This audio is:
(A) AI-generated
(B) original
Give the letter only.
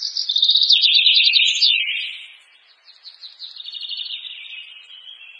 B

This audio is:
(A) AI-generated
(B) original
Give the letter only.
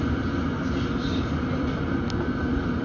B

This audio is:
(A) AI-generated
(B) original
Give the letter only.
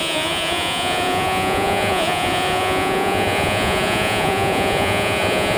A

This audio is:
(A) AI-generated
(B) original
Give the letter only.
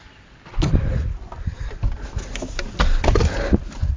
B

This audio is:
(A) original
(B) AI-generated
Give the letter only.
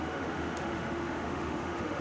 B